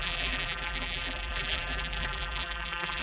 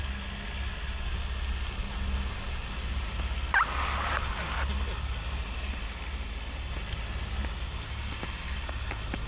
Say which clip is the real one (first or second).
second